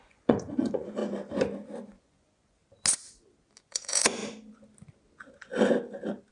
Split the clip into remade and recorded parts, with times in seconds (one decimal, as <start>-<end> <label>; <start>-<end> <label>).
0.0-1.0 remade; 1.0-2.0 recorded; 2.0-2.6 remade; 2.6-3.6 recorded; 3.6-4.2 remade; 4.2-6.3 recorded